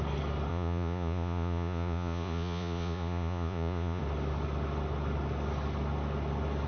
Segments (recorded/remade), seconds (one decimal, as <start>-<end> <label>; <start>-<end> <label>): 0.0-0.5 recorded; 0.5-4.0 remade; 4.0-6.7 recorded